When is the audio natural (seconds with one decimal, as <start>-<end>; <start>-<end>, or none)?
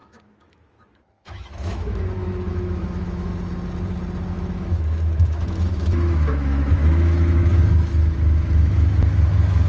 3.3-4.3